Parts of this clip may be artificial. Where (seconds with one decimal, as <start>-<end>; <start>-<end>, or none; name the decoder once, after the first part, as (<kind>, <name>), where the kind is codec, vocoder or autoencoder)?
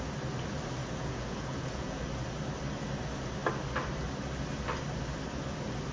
0.8-2.0 (vocoder, Vocos)